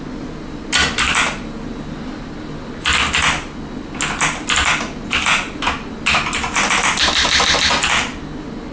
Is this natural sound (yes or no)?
yes